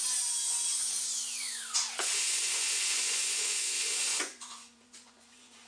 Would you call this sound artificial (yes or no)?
yes